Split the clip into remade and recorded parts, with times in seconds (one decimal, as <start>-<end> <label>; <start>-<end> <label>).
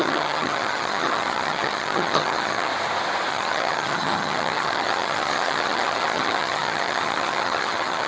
0.0-2.7 remade; 2.7-3.3 recorded; 3.3-8.1 remade